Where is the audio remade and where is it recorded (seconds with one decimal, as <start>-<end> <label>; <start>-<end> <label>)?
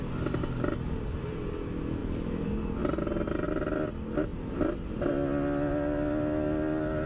0.0-2.0 recorded; 2.0-2.9 remade; 2.9-4.3 recorded; 4.3-5.1 remade; 5.1-7.1 recorded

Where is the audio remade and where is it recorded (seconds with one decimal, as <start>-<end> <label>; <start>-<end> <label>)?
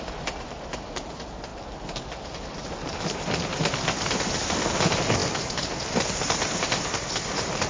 0.0-7.7 recorded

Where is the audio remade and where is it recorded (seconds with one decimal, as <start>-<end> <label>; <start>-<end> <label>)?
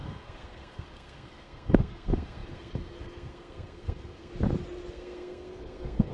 0.0-4.3 remade; 4.3-4.9 recorded; 4.9-6.1 remade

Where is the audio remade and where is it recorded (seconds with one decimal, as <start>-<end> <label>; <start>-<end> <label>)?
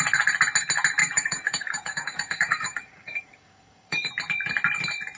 0.0-1.0 recorded; 1.0-4.1 remade; 4.1-5.2 recorded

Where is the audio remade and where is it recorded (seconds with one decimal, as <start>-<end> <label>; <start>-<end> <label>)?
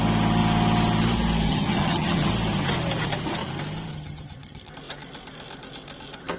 0.0-1.5 recorded; 1.5-2.3 remade; 2.3-3.9 recorded; 3.9-4.7 remade; 4.7-6.4 recorded